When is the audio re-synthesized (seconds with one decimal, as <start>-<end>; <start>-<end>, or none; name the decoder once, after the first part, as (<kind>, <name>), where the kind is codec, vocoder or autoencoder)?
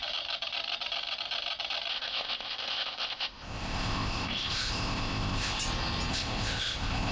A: 1.9-5.6 (codec, ZipCodec); 6.1-7.1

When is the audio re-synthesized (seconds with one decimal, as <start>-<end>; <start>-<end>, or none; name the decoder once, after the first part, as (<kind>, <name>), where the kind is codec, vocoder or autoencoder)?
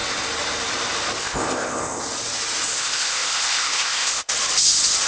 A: 1.2-2.0 (codec, ZipCodec); 2.7-4.3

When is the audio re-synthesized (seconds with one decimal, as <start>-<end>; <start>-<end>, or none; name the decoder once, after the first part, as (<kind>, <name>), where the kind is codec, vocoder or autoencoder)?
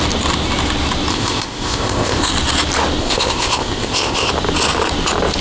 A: 1.1-2.3 (codec, ZipCodec); 3.0-4.3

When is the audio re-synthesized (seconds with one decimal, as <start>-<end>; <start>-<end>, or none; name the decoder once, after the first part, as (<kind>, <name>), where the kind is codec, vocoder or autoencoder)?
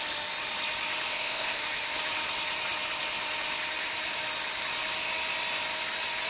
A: 1.1-1.6 (codec, ZipCodec)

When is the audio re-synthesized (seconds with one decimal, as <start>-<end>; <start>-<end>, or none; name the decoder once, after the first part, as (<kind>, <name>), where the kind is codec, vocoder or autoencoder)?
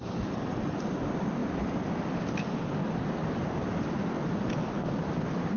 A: none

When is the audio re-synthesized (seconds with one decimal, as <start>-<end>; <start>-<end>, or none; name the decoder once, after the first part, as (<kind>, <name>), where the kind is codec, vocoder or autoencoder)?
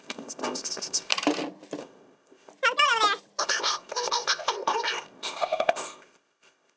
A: 0.0-1.1 (codec, ZipCodec); 1.8-2.5; 3.4-6.8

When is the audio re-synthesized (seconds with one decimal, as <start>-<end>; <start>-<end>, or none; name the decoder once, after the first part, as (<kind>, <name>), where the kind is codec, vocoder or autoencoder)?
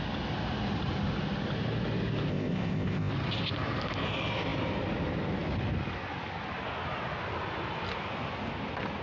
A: 2.3-3.1 (codec, ZipCodec)